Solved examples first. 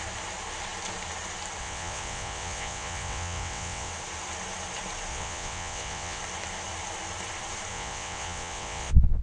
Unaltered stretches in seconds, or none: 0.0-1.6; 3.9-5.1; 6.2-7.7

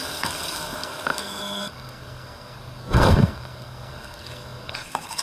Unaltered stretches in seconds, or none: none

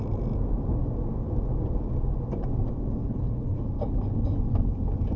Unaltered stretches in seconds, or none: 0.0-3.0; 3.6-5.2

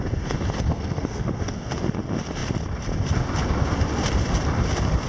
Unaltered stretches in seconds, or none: 0.0-0.7; 1.7-5.1

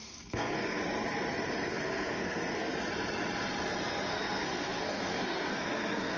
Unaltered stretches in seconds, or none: 0.8-1.7; 2.7-4.1

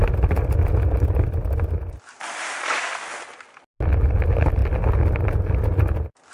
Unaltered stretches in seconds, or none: 0.0-6.3

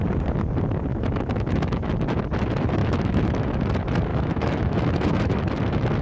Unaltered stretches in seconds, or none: 0.0-0.9; 1.9-2.8; 3.6-4.1; 5.3-6.0